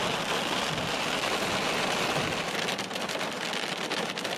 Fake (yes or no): no